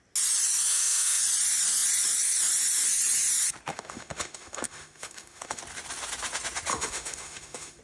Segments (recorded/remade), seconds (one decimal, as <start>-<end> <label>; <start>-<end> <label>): 0.0-0.7 recorded; 0.7-1.2 remade; 1.2-3.7 recorded; 3.7-5.6 remade; 5.6-6.7 recorded; 6.7-7.8 remade